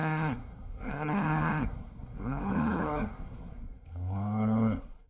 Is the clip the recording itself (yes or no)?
no